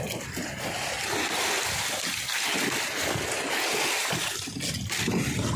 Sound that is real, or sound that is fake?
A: real